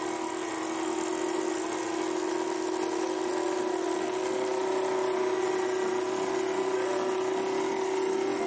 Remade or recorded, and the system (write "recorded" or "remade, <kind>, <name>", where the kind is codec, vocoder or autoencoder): recorded